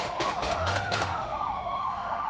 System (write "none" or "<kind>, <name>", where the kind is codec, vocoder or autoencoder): autoencoder, DAC-VAE